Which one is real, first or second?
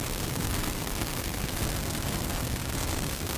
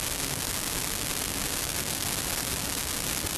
second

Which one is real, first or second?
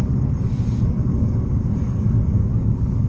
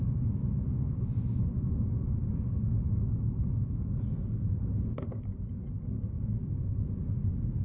second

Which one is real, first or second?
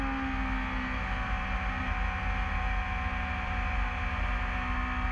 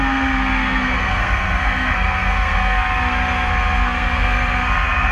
first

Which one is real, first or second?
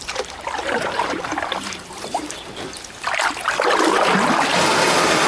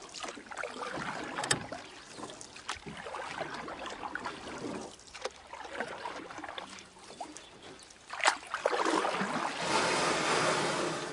second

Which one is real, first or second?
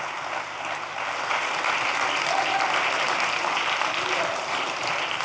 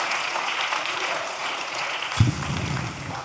first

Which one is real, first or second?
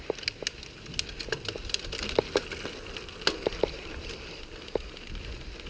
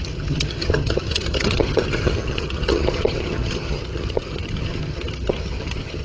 first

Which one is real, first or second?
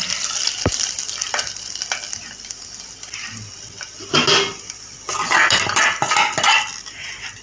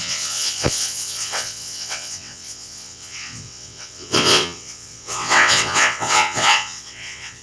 first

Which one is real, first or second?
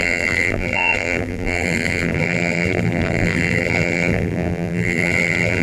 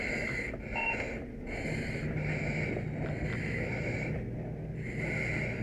second